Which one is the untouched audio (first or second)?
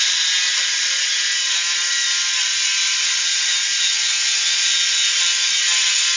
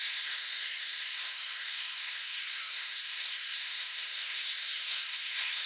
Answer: first